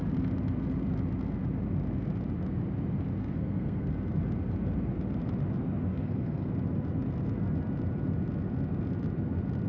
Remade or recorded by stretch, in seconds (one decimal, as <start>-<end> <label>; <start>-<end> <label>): 0.0-3.2 recorded; 3.2-3.9 remade; 3.9-5.9 recorded; 5.9-6.5 remade; 6.5-9.7 recorded